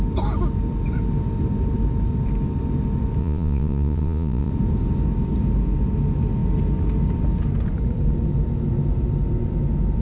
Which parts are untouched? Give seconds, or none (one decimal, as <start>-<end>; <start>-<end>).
0.0-3.2; 4.5-10.0